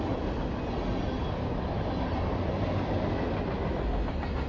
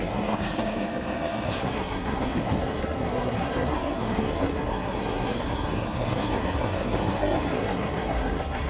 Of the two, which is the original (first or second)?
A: first